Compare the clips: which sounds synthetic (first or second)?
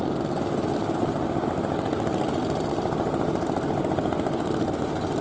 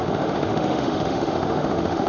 second